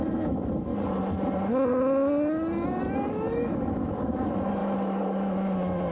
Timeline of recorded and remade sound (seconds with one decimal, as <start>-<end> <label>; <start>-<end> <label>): 0.0-0.7 remade; 0.7-3.1 recorded; 3.1-5.9 remade